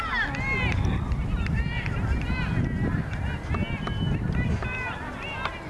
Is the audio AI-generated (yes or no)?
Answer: no